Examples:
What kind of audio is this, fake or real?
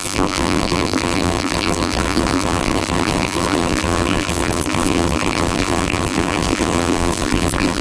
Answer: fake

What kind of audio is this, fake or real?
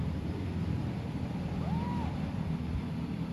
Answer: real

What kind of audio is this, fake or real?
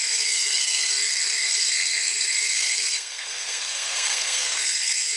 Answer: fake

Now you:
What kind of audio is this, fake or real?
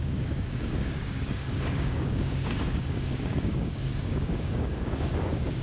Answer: fake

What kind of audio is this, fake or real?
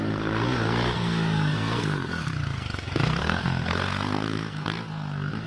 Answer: fake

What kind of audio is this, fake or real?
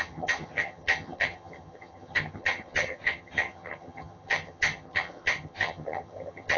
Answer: fake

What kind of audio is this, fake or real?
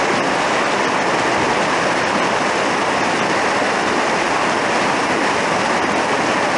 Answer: real